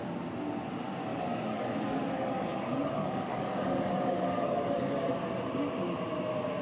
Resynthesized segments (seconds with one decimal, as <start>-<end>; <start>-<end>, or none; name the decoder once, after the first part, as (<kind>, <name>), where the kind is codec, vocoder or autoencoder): 1.1-5.1 (codec, DAC)